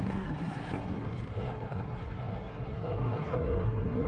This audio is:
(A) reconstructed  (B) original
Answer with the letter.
A